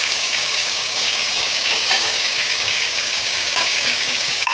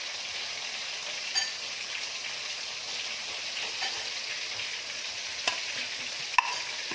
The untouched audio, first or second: second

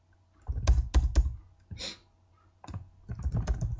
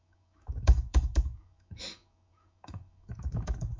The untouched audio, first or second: first